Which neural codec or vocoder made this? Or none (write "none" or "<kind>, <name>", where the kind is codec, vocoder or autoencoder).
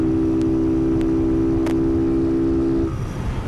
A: none